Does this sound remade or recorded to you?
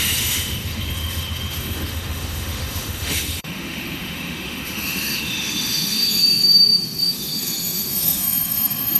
remade